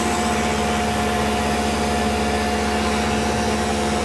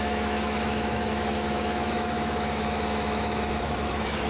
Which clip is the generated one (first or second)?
second